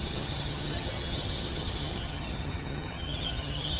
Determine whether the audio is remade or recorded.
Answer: remade